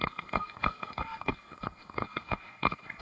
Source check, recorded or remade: remade